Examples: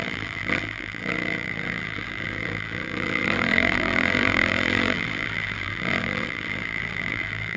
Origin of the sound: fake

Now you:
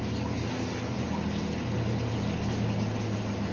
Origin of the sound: real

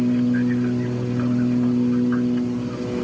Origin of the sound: real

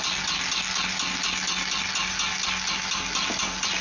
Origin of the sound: real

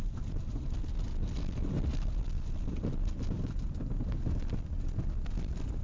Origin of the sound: fake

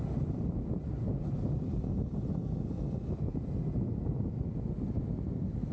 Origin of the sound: real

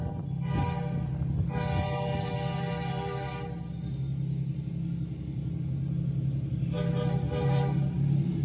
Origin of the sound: real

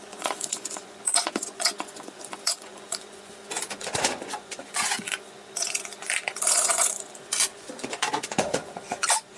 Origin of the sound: fake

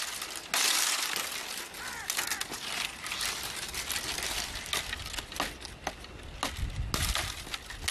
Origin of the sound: real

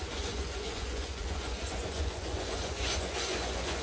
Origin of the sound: fake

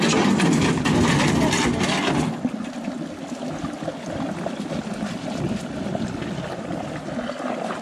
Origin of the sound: real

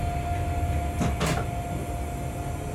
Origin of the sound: real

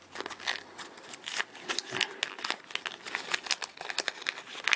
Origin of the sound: real